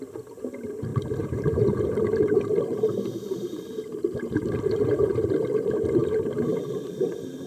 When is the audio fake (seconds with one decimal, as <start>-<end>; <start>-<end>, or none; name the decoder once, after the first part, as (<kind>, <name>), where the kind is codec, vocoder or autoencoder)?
0.9-5.1 (vocoder, BigVGAN v2); 6.0-7.1